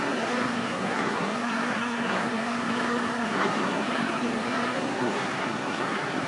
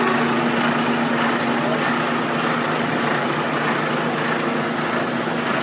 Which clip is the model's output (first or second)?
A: first